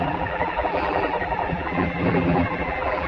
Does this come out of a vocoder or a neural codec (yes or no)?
yes